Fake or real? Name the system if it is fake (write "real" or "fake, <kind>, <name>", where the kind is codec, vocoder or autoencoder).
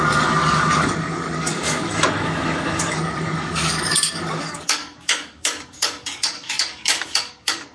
fake, codec, DAC